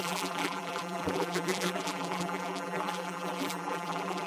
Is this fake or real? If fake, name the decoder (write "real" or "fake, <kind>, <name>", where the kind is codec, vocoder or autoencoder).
fake, vocoder, BigVGAN v2